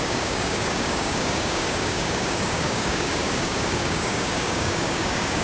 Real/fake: fake